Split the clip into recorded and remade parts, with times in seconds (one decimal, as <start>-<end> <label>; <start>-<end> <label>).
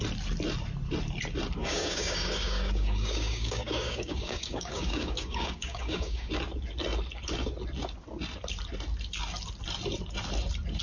0.0-1.6 recorded; 1.6-6.3 remade; 6.3-10.8 recorded